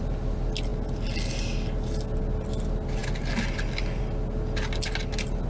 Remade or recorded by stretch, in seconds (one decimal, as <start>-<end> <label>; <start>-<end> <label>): 0.0-5.5 recorded